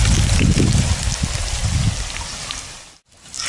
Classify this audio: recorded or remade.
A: recorded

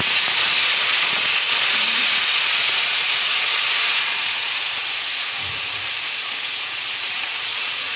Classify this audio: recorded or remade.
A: remade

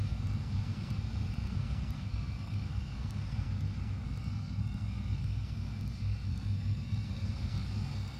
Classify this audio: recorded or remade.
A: remade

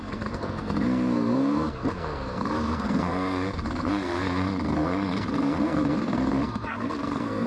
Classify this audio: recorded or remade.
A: remade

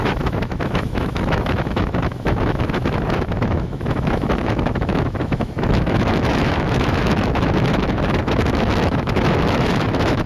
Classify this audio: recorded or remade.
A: remade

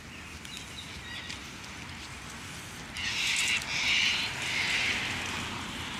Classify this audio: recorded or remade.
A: recorded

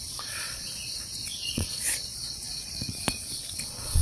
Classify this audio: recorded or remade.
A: remade